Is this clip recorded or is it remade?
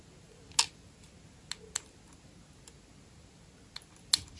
recorded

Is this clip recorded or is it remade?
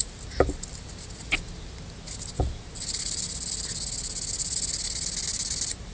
recorded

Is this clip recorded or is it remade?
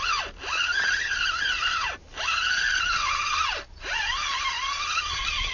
recorded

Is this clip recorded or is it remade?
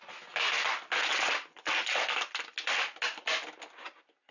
recorded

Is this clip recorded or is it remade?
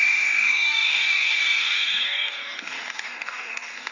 remade